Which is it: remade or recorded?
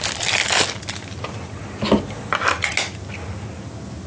recorded